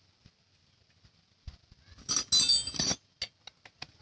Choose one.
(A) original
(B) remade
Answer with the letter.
A